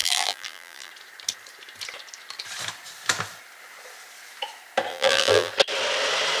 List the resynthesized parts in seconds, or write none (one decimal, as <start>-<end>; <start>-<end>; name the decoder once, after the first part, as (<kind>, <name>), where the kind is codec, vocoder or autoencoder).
0.0-0.9 (vocoder, BigVGAN v2); 4.9-5.5